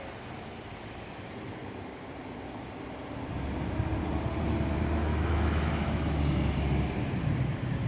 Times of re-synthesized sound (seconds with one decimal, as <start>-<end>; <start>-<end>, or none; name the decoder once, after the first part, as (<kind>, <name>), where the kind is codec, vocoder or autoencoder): 5.1-6.2 (autoencoder, DAC-VAE)